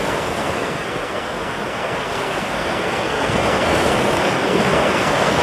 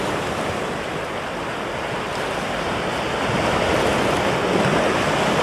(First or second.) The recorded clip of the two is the second